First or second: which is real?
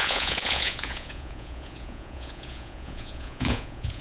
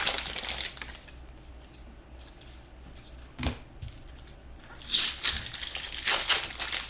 second